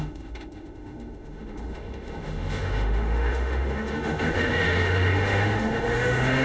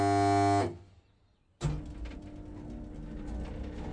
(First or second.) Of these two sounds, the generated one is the first